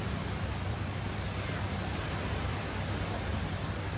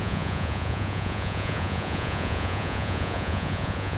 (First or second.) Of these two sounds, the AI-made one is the second